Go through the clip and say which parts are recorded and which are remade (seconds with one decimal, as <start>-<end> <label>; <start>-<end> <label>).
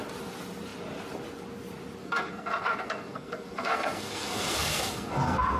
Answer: 0.0-2.0 recorded; 2.0-5.6 remade